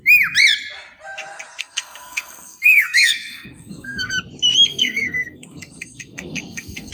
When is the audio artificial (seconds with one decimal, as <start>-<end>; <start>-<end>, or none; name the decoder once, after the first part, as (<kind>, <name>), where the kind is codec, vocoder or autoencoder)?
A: 1.6-4.1 (codec, SNAC); 4.7-6.9